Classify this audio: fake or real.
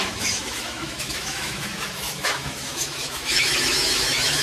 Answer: fake